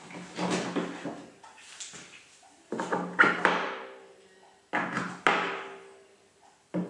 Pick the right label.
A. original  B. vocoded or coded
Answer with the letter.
A